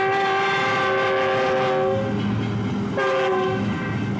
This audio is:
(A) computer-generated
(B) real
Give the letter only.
B